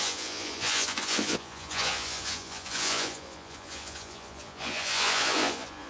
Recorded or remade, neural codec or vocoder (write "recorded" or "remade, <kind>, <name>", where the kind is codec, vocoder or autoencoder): remade, vocoder, Vocos